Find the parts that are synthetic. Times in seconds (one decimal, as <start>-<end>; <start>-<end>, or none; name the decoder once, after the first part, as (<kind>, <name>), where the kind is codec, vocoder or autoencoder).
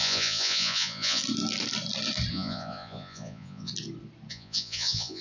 0.0-1.2 (vocoder, Vocos); 2.3-3.7; 4.3-5.2